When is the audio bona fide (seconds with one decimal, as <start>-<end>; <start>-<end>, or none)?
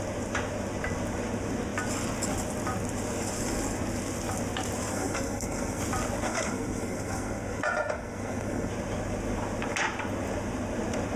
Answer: 0.0-4.9; 5.8-6.2; 8.7-11.2